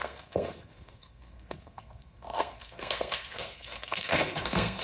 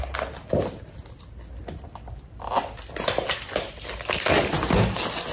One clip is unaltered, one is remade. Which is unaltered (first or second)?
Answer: second